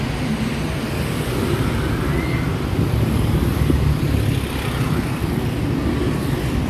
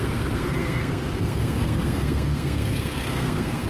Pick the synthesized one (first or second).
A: second